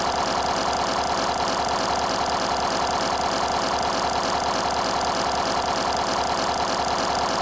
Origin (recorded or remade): recorded